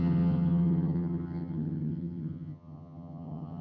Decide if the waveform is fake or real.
fake